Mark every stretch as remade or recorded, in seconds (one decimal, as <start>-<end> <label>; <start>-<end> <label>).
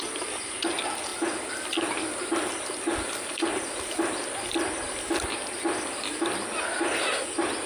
0.0-7.7 recorded